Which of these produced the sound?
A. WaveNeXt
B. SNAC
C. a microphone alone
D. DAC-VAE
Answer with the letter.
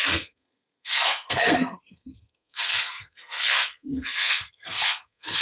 B